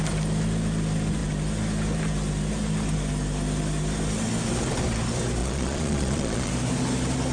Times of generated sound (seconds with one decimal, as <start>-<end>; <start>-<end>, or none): 5.4-6.5